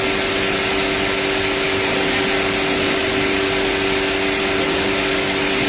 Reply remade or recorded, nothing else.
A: recorded